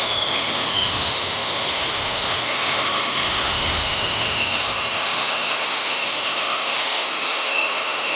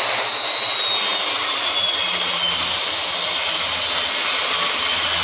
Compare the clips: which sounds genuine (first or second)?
second